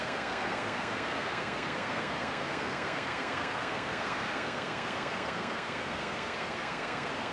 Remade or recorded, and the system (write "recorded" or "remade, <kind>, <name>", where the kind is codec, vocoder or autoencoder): remade, codec, SNAC